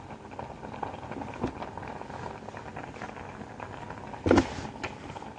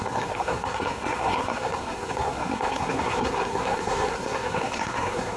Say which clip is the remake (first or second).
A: second